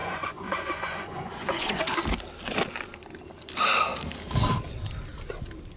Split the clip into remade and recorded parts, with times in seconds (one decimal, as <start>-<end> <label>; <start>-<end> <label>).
0.0-1.8 remade; 1.8-5.8 recorded